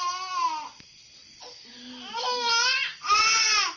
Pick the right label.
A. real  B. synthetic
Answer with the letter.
A